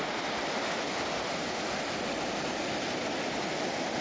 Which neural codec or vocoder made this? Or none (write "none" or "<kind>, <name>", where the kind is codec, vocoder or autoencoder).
none